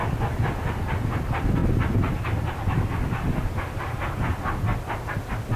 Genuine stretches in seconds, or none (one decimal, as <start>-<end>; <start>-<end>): 0.0-5.6